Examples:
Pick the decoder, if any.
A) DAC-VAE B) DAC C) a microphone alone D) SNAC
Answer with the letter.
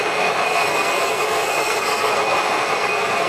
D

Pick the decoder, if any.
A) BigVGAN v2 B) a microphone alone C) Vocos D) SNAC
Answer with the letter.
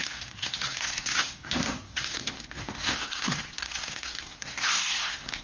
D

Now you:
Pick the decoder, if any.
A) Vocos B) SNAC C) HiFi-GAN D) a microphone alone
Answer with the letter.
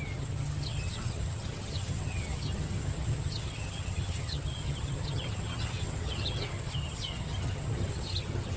C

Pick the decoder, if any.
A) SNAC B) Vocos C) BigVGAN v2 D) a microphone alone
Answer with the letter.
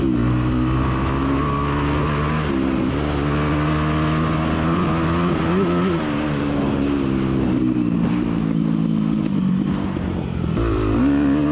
D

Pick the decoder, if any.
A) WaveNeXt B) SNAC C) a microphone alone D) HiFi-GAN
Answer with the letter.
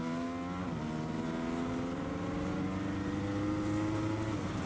C